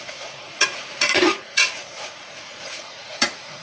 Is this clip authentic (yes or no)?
no